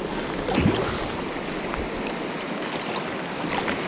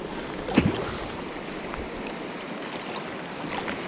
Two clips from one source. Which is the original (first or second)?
first